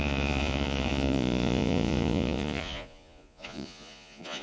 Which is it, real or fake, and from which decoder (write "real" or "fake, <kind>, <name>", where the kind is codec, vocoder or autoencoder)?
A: fake, vocoder, Vocos